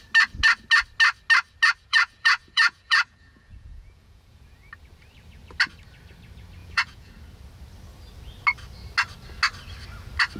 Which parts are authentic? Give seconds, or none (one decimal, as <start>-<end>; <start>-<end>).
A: 0.0-1.9; 4.7-6.6; 7.1-10.4